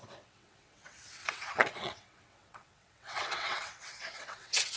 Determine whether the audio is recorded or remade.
remade